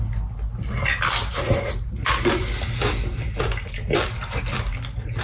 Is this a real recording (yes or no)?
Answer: yes